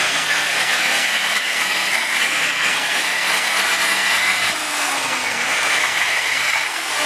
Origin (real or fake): fake